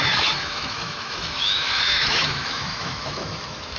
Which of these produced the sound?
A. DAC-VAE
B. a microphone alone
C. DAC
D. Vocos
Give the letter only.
A